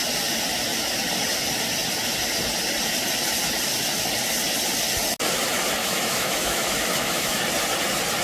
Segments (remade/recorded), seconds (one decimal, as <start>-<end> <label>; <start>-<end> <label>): 0.0-5.8 recorded; 5.8-7.4 remade; 7.4-8.2 recorded